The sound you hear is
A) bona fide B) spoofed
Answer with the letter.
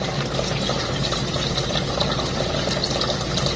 A